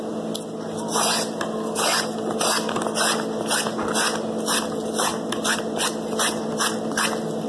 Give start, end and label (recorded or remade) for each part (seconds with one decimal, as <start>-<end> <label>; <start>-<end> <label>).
0.0-7.5 recorded